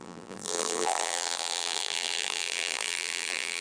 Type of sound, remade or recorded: remade